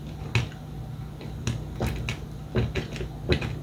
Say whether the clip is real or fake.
real